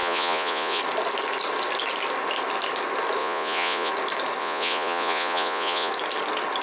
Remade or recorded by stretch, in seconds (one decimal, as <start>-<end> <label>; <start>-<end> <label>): 0.0-0.8 remade; 0.8-3.2 recorded; 3.2-3.9 remade; 3.9-4.4 recorded; 4.4-5.9 remade; 5.9-6.6 recorded